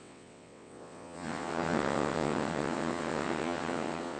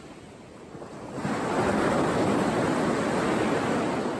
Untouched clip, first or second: second